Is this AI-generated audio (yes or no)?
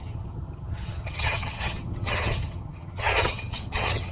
yes